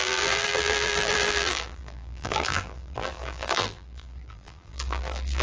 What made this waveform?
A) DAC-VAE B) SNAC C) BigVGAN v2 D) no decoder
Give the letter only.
C